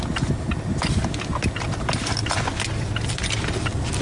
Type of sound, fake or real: real